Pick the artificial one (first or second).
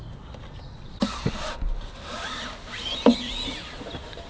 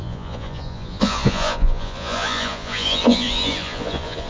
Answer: second